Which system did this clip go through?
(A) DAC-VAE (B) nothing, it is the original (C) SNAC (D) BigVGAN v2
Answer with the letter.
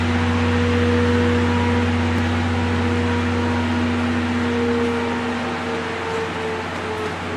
B